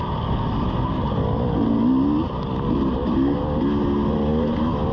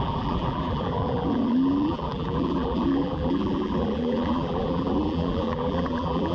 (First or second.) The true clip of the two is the first